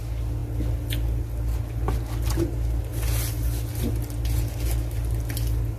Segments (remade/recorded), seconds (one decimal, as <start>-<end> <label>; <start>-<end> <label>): 0.0-5.8 recorded